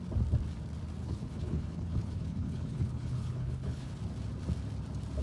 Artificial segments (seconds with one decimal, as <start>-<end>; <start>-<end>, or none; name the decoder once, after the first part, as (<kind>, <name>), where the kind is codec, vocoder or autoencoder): 1.0-4.0 (codec, HILCodec)